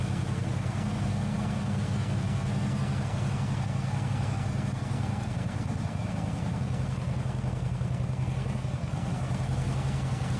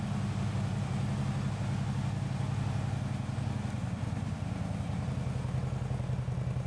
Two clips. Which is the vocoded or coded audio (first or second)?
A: first